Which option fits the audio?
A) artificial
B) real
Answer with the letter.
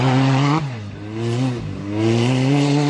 B